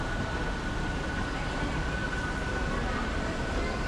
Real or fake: real